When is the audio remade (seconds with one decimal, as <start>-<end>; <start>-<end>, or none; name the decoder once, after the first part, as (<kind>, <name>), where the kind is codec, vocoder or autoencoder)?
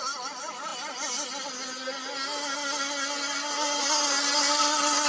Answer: none